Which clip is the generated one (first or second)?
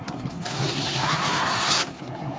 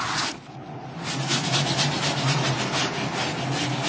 first